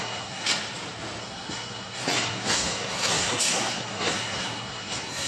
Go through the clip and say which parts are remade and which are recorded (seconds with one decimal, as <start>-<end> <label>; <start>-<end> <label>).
0.0-0.5 remade; 0.5-1.2 recorded; 1.2-5.3 remade